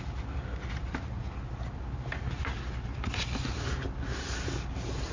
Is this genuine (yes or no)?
yes